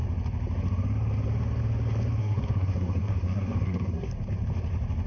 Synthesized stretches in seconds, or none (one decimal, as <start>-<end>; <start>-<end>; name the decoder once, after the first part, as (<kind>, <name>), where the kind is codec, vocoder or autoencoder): 2.2-4.1 (codec, SNAC)